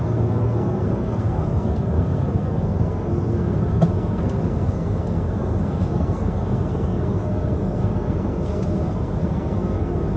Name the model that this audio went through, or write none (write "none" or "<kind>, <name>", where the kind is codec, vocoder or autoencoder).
codec, SNAC